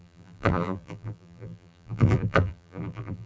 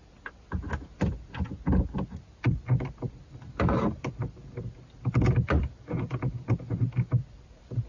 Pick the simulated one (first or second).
first